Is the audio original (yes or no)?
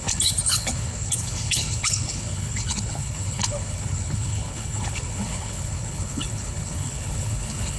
no